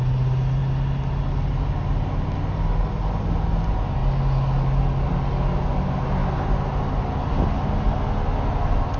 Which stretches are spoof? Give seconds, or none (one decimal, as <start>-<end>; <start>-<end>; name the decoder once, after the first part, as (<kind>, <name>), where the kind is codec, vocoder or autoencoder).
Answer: 6.2-7.4 (vocoder, BigVGAN v2)